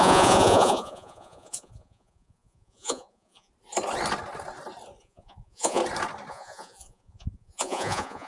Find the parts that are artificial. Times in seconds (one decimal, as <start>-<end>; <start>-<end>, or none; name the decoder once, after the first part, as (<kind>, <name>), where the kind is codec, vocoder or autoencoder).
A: 0.0-3.5 (vocoder, Vocos); 5.0-5.8; 6.3-8.3